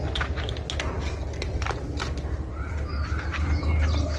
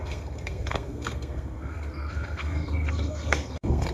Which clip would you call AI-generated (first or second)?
second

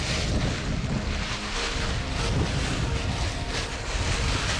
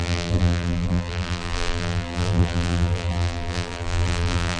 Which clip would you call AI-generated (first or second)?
second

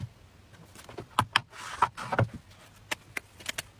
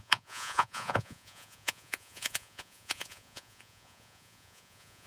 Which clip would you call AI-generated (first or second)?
second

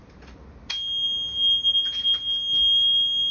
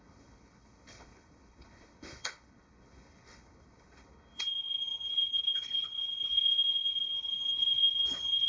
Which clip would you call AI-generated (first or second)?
second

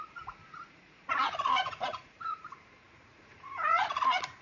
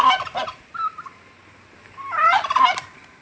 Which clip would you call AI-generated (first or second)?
first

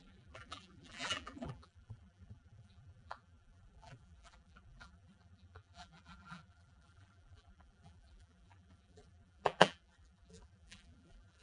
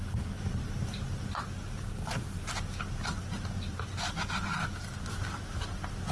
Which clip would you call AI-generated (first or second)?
first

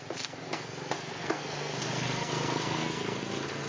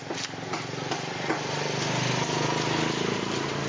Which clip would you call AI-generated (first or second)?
first